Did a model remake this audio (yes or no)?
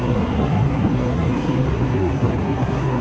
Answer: yes